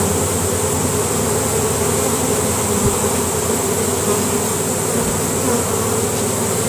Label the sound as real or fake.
real